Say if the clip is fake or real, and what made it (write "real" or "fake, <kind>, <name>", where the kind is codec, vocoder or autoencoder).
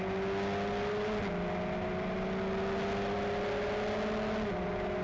real